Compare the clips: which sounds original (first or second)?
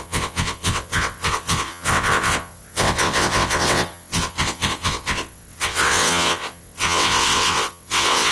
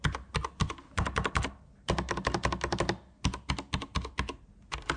second